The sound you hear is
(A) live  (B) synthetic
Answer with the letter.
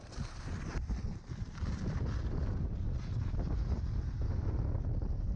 A